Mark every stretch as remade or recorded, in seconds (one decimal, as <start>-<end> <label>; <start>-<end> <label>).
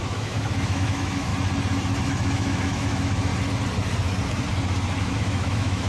0.0-1.3 remade; 1.3-2.0 recorded; 2.0-3.3 remade; 3.3-5.0 recorded; 5.0-5.9 remade